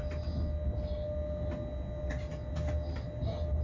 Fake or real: real